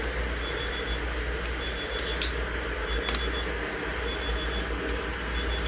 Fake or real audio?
real